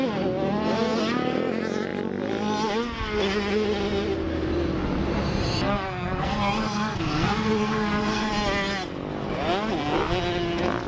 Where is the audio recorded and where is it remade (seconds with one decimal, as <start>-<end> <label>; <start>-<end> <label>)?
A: 0.0-5.7 recorded; 5.7-8.3 remade; 8.3-10.9 recorded